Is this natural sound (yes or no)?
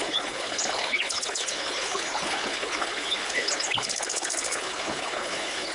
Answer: no